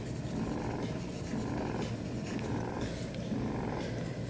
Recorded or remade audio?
recorded